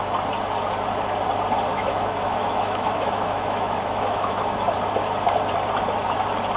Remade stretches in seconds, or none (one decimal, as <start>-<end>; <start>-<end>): 1.7-4.4